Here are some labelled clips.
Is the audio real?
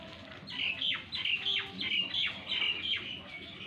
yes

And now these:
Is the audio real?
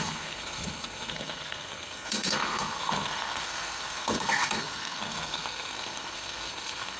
no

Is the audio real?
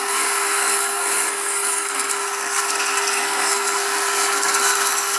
no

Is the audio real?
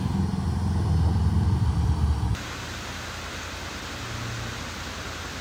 yes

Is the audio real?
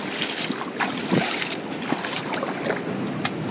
yes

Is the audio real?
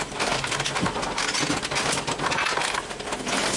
yes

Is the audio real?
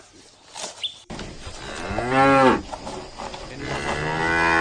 yes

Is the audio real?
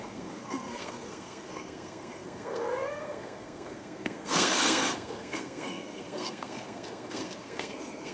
no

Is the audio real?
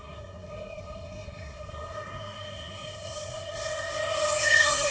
no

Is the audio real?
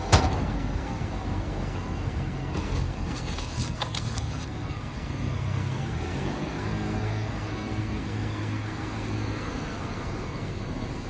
no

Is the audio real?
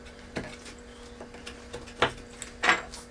yes